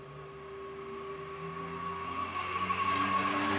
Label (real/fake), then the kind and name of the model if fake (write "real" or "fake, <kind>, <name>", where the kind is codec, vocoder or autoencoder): real